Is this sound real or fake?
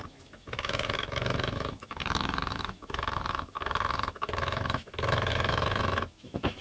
fake